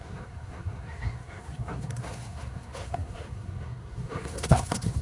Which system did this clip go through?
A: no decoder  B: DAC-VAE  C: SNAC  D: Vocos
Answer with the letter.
C